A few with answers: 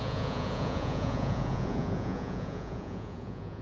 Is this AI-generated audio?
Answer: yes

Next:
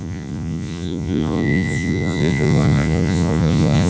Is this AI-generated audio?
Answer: yes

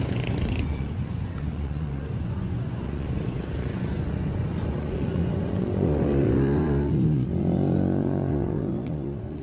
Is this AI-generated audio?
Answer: yes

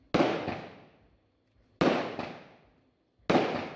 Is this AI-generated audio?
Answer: no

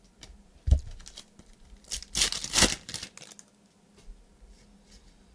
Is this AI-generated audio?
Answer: no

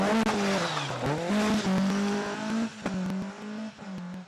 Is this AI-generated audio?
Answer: no